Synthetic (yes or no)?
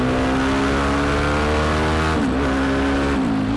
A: no